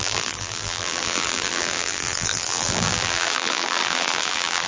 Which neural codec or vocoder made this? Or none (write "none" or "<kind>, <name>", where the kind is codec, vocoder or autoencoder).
vocoder, BigVGAN v2